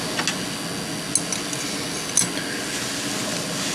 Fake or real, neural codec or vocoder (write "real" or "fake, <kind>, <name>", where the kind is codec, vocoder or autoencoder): real